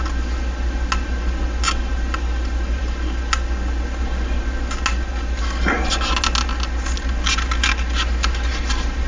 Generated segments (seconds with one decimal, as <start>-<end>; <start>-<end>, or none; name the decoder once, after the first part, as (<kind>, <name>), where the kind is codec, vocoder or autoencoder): none